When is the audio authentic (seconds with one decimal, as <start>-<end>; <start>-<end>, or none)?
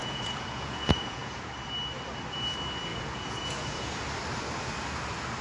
1.5-2.9; 4.0-5.4